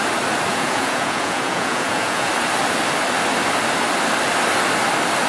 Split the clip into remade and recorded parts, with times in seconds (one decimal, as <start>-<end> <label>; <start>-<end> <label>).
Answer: 0.0-0.5 recorded; 0.5-2.3 remade; 2.3-5.3 recorded